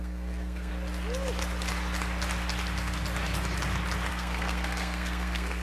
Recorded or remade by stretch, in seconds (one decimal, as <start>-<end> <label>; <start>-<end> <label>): 0.0-0.7 remade; 0.7-4.1 recorded; 4.1-5.6 remade